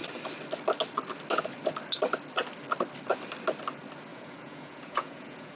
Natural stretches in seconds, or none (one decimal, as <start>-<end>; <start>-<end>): 0.0-4.1